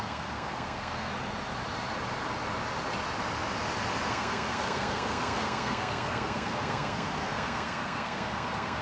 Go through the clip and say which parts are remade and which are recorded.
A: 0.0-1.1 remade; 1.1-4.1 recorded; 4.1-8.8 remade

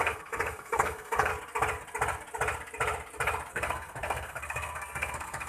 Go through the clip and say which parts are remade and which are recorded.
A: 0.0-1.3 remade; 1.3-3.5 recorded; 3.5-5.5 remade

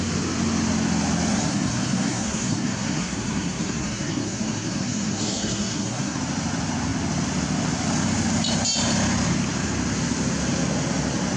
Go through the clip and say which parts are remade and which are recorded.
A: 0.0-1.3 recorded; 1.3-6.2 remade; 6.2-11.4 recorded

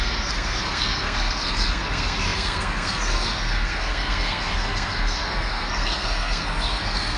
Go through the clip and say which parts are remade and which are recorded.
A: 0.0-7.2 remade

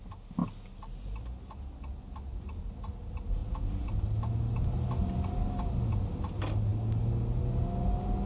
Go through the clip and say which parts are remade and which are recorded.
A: 0.0-8.3 recorded

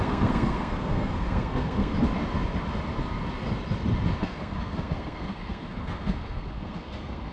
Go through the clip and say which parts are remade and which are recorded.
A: 0.0-1.9 remade; 1.9-4.2 recorded; 4.2-7.3 remade

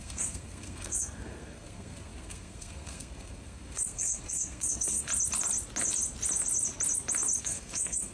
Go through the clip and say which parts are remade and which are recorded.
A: 0.0-5.1 remade; 5.1-7.4 recorded; 7.4-8.1 remade